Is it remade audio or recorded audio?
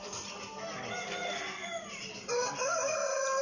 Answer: recorded